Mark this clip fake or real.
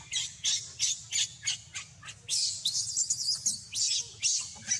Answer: real